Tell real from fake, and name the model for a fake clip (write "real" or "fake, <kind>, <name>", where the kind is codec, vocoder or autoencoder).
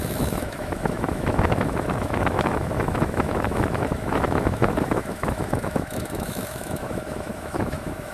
fake, autoencoder, DAC-VAE